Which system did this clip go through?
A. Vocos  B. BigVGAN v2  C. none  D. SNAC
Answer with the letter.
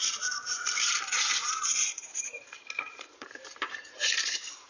B